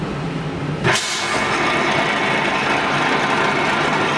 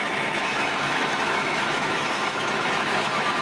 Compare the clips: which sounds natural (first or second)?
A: first